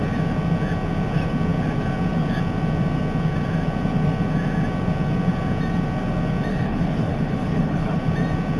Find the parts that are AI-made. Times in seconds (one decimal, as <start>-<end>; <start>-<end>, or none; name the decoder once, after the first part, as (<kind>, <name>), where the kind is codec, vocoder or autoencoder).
6.5-8.0 (codec, HILCodec)